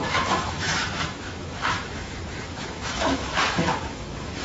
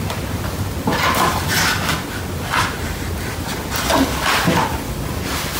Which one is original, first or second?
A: second